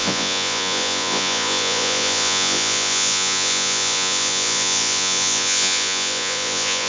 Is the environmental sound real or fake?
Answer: fake